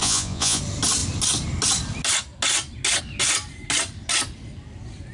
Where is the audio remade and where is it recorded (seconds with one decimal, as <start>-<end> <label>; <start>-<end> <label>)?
0.0-0.6 remade; 0.6-5.1 recorded